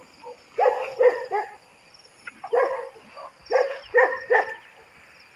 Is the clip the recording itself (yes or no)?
yes